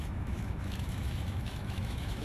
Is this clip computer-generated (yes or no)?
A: yes